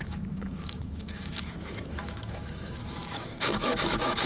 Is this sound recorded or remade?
remade